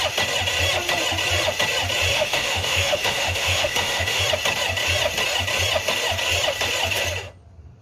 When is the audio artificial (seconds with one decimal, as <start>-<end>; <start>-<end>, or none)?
2.1-4.2

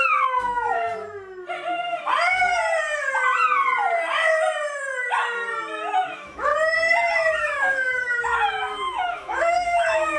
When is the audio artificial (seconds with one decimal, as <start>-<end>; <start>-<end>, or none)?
0.0-0.9; 5.9-6.5; 7.4-10.2